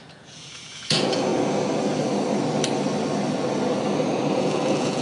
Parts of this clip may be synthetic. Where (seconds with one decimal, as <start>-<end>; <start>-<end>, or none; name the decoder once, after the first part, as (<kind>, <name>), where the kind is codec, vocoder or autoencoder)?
0.0-1.3 (vocoder, Vocos); 4.3-5.0